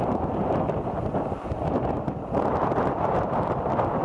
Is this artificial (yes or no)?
yes